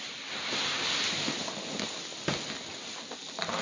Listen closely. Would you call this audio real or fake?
real